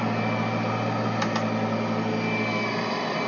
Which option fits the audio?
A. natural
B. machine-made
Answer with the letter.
A